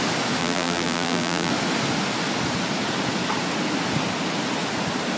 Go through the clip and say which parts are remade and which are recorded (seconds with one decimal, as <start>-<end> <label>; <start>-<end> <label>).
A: 0.0-0.4 recorded; 0.4-1.5 remade; 1.5-5.2 recorded